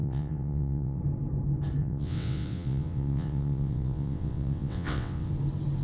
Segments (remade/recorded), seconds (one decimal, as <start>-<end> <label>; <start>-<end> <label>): 0.0-1.0 remade; 1.0-1.8 recorded; 1.8-5.3 remade; 5.3-5.8 recorded